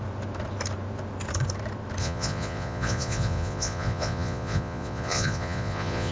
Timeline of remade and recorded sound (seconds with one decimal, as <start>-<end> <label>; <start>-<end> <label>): 0.0-2.0 recorded; 2.0-6.1 remade